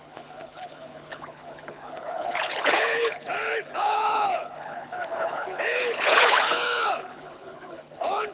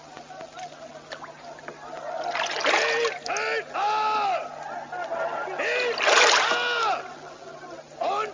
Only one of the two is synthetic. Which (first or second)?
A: first